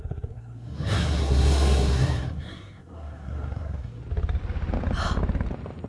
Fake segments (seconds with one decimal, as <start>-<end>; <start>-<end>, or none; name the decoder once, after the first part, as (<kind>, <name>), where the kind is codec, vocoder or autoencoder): 0.0-4.0 (codec, SNAC)